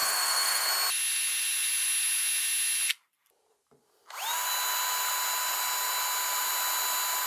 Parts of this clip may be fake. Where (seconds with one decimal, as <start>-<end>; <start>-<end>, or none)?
0.0-0.7